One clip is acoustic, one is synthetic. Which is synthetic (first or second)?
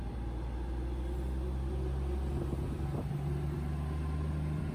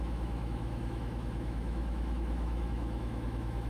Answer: second